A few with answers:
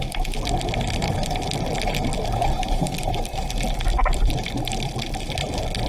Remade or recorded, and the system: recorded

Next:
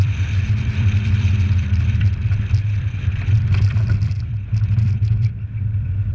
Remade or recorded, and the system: remade, vocoder, BigVGAN v2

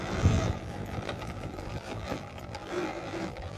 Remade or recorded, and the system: remade, vocoder, BigVGAN v2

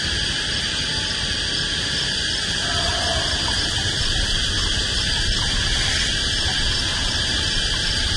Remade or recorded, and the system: recorded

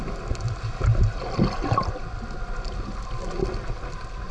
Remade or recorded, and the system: recorded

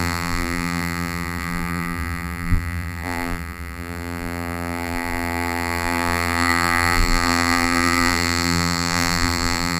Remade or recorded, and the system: remade, vocoder, BigVGAN v2